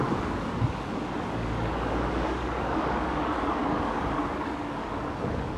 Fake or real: fake